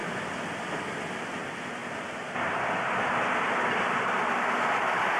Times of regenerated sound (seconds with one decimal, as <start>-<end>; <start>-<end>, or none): none